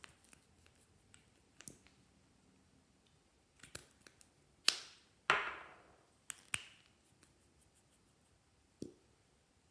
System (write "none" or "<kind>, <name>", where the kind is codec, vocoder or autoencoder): none